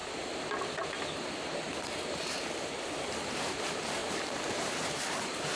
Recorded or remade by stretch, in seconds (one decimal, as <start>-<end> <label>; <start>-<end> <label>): 0.0-3.1 recorded; 3.1-5.6 remade